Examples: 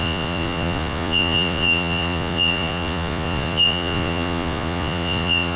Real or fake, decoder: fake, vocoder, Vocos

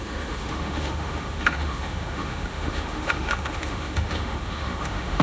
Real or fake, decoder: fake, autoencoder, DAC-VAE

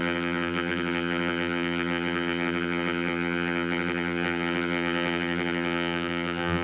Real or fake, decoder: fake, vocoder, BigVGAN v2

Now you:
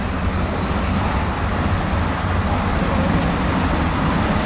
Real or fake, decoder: real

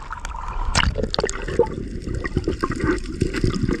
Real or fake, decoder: real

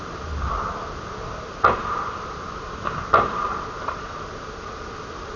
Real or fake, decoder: fake, vocoder, BigVGAN v2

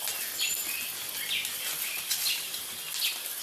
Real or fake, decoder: real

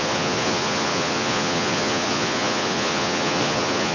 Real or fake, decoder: fake, vocoder, Vocos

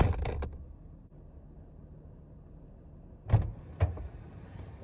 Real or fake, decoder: real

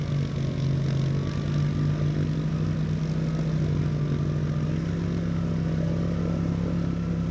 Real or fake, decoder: real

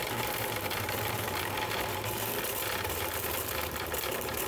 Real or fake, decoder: fake, vocoder, BigVGAN v2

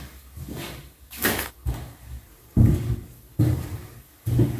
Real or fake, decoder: fake, codec, DAC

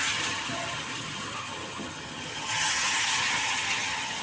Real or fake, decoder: fake, vocoder, HiFi-GAN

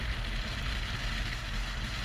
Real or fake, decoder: real